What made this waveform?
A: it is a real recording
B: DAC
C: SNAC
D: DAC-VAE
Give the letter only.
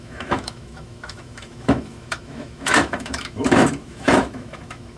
D